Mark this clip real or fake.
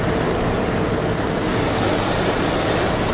real